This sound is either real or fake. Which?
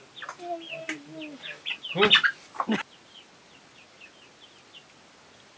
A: real